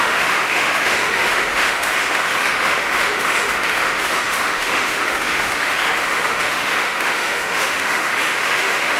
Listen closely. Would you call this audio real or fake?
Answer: fake